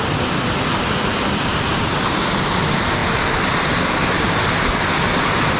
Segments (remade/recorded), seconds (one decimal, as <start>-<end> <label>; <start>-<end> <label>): 0.0-5.6 recorded